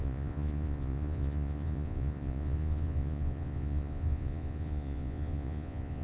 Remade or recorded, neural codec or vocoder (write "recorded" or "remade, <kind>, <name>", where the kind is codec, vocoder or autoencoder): remade, vocoder, Vocos